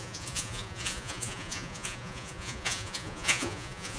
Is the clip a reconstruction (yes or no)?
yes